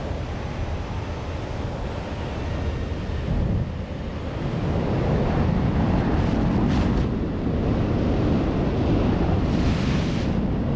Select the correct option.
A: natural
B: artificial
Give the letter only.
A